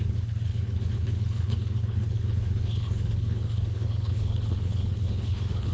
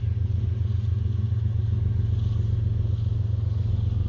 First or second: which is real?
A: second